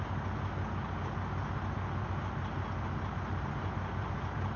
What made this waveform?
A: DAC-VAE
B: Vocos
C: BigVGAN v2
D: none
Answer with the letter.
D